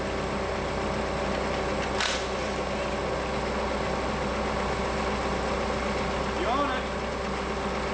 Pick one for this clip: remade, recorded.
recorded